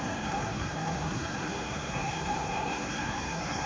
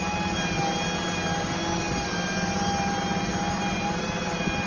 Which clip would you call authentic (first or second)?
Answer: second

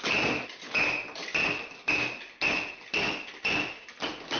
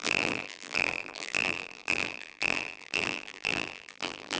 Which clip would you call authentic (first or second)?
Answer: first